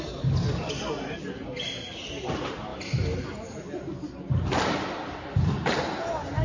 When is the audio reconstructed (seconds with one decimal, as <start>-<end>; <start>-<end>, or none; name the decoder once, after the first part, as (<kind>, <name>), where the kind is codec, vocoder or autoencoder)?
none